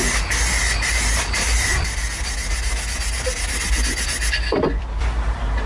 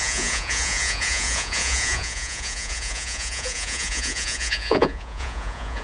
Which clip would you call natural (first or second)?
first